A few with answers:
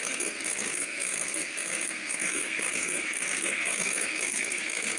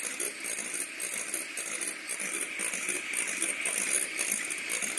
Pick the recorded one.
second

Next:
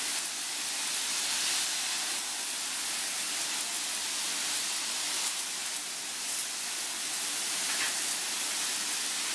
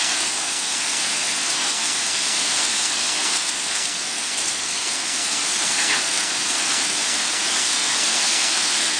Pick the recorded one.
first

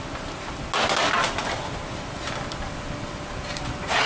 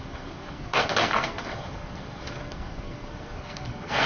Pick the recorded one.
first